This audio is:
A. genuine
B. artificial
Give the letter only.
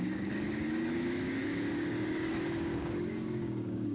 B